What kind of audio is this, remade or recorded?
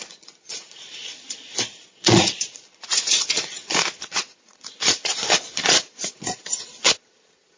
remade